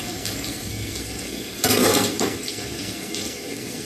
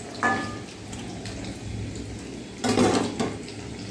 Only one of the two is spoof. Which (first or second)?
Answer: first